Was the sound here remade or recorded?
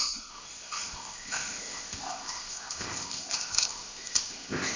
remade